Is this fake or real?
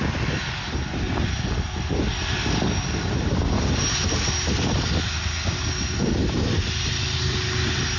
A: real